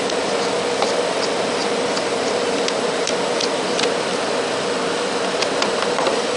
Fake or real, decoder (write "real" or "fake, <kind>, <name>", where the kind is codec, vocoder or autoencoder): real